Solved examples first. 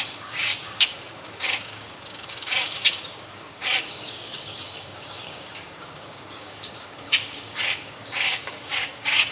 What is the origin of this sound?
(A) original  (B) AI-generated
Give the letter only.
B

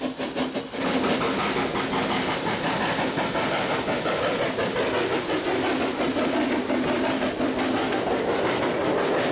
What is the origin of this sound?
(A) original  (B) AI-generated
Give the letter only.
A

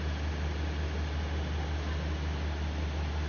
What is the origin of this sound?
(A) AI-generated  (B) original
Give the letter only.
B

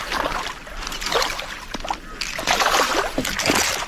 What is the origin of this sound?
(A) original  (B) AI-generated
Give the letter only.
A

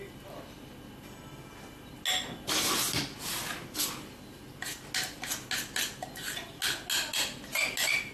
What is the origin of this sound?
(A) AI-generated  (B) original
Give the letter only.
B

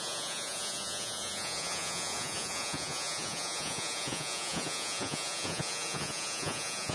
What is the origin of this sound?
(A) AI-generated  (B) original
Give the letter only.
A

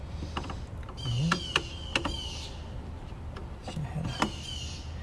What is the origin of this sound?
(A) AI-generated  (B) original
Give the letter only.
B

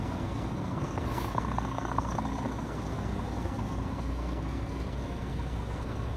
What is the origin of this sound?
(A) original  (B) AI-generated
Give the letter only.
B